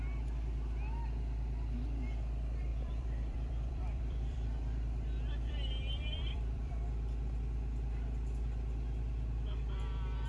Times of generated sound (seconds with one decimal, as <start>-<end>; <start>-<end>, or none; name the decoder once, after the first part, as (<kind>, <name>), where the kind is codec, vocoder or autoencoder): 2.7-6.7 (vocoder, BigVGAN v2)